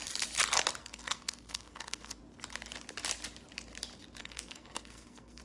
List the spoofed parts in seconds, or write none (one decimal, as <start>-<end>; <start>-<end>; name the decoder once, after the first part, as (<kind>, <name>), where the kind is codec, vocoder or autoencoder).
0.8-2.2 (codec, SNAC); 4.2-5.4